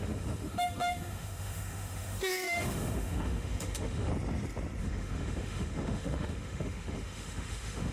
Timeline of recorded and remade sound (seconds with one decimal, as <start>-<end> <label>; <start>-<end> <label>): 0.0-4.1 remade; 4.1-4.8 recorded; 4.8-7.9 remade